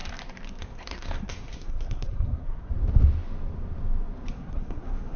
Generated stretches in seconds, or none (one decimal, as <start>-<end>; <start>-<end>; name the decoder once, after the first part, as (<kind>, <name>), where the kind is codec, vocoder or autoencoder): 0.6-2.7 (codec, SNAC); 4.3-5.2